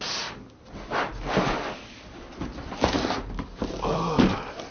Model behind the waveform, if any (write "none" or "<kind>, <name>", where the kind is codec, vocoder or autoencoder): none